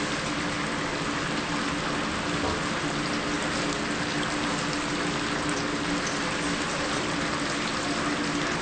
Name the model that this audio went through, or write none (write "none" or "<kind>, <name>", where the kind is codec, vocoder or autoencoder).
none